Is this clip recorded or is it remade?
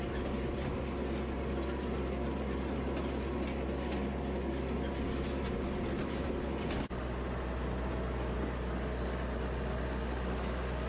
recorded